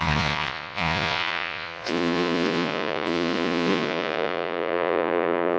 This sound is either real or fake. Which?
fake